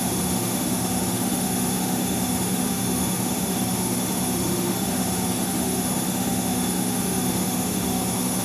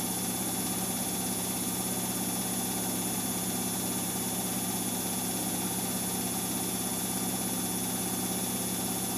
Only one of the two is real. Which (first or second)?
second